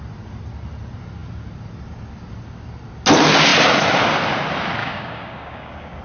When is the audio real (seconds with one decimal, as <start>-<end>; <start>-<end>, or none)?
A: 0.0-4.8